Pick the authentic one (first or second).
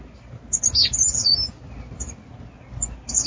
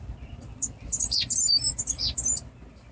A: first